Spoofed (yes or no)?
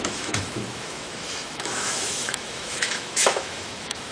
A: yes